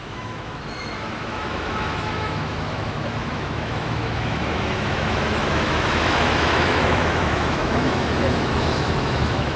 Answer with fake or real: fake